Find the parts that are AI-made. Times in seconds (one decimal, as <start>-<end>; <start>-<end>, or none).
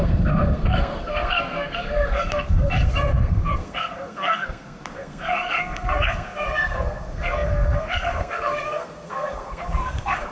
0.0-10.3